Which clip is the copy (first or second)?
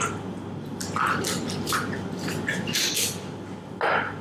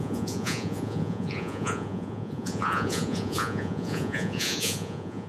second